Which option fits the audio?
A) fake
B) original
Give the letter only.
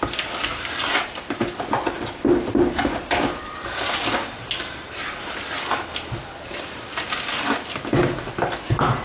B